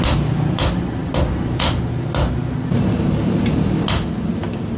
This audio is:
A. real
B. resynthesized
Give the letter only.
A